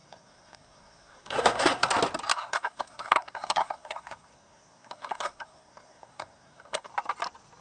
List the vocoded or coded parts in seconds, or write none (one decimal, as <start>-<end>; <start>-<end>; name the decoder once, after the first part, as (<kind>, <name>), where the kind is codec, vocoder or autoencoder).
0.0-1.9 (codec, SNAC); 2.3-6.9